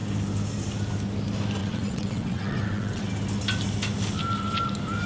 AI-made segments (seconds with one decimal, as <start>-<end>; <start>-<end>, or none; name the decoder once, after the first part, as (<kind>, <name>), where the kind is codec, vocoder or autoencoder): 1.6-3.1 (vocoder, WaveNeXt)